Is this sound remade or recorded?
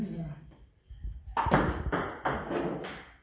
recorded